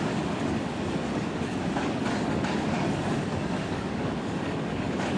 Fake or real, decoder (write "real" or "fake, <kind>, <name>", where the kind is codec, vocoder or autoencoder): fake, codec, DAC